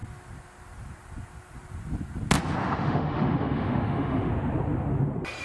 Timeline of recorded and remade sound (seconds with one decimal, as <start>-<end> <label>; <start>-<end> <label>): 0.0-2.6 recorded; 2.6-4.3 remade; 4.3-5.4 recorded